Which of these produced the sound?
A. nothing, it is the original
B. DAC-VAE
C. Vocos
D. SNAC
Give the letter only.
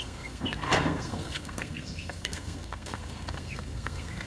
D